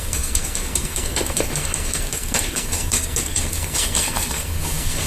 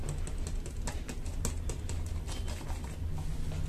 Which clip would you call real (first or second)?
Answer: second